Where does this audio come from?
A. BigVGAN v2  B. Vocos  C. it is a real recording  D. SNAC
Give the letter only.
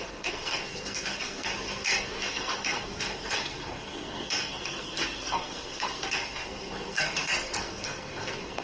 D